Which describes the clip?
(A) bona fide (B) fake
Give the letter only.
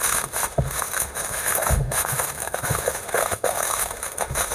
B